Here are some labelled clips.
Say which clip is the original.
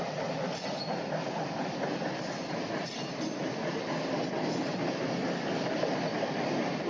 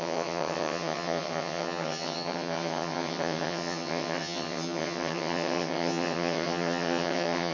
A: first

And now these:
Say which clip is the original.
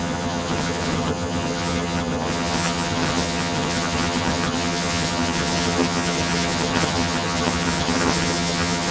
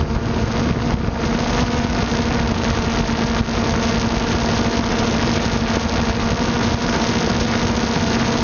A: second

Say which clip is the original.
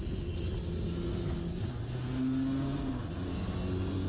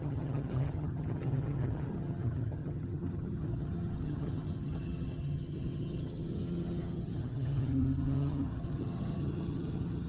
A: first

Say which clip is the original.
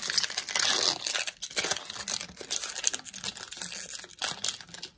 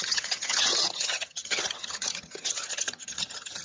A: first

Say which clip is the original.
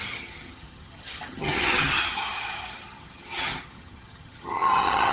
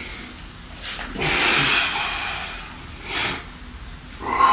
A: second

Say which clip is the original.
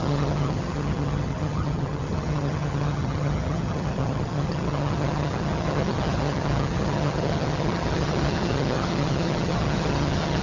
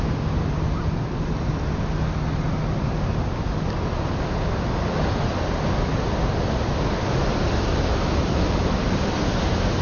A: second